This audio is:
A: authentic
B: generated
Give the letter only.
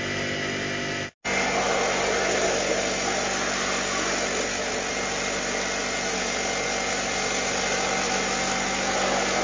A